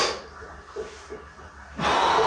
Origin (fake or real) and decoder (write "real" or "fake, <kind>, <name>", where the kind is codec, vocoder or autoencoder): real